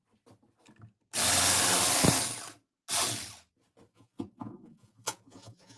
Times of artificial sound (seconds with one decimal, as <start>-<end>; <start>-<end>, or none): 3.9-5.8